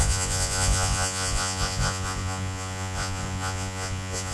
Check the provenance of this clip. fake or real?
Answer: fake